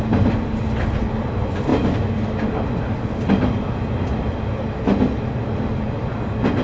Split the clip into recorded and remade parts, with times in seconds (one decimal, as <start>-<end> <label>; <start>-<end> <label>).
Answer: 0.0-6.6 recorded